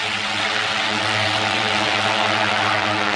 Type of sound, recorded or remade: remade